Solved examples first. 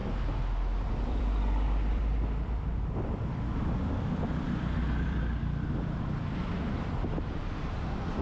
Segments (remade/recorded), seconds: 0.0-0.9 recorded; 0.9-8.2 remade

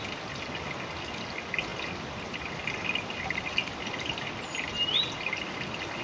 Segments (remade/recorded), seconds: 0.0-6.0 recorded

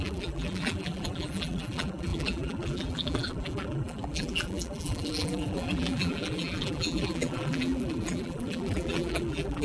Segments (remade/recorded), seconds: 0.0-9.6 remade

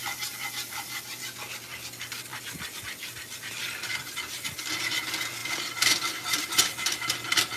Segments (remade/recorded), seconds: 0.0-1.1 remade; 1.1-2.3 recorded; 2.3-4.1 remade; 4.1-5.4 recorded; 5.4-7.0 remade; 7.0-7.6 recorded

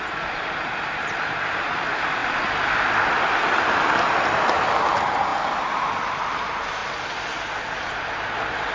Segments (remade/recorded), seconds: 0.0-2.2 remade; 2.2-4.4 recorded; 4.4-5.3 remade; 5.3-6.3 recorded; 6.3-6.8 remade; 6.8-7.6 recorded; 7.6-8.7 remade

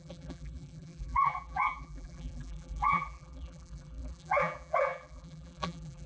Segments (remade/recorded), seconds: 0.0-6.1 remade

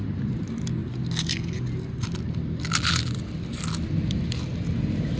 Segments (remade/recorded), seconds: 0.0-0.8 remade; 0.8-2.8 recorded; 2.8-4.5 remade; 4.5-5.2 recorded